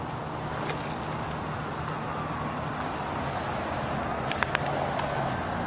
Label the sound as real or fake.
real